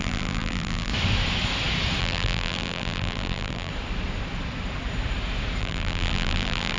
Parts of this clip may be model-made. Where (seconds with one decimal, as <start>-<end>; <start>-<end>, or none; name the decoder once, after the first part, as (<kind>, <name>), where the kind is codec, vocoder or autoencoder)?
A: 0.0-0.9 (vocoder, BigVGAN v2); 2.0-3.7; 5.6-6.8